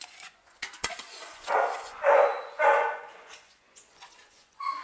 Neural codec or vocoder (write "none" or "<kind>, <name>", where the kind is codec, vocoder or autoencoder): vocoder, Vocos